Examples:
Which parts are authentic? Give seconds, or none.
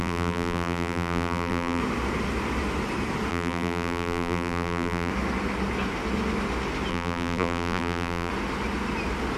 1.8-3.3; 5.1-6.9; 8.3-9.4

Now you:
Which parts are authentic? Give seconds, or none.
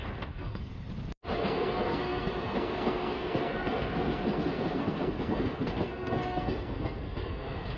0.7-1.4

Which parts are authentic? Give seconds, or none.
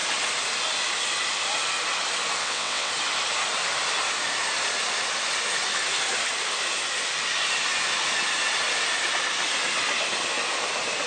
0.0-2.4; 2.9-11.1